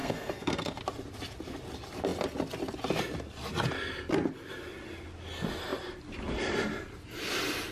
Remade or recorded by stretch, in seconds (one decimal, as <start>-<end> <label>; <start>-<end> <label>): 0.0-0.8 remade; 0.8-7.7 recorded